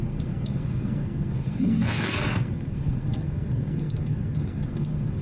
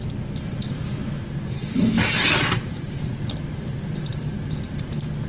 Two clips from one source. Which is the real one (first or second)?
second